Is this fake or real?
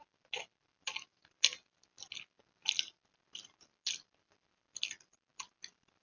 real